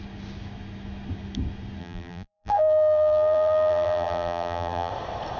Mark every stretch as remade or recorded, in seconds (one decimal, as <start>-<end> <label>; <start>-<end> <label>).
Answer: 0.0-1.8 recorded; 1.8-4.9 remade; 4.9-5.4 recorded